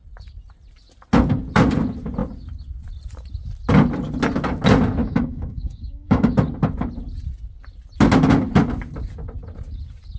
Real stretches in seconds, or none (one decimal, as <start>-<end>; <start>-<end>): 0.0-5.0; 6.3-10.2